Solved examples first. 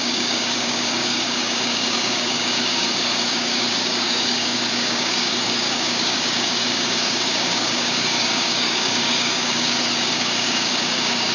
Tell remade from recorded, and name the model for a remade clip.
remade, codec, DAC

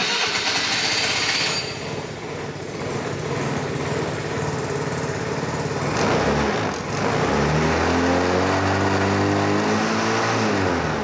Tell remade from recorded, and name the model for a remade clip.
recorded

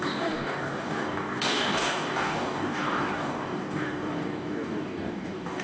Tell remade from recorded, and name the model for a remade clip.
remade, codec, DAC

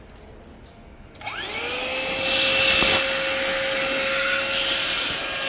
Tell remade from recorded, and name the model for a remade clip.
recorded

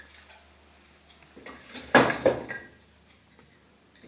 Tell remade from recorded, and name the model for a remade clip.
recorded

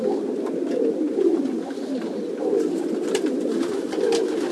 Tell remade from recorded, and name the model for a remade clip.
recorded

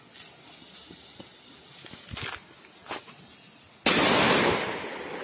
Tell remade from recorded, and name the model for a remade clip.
recorded